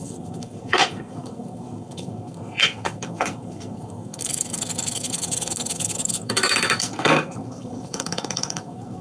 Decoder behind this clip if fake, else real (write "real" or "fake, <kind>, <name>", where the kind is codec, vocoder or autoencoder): fake, codec, SNAC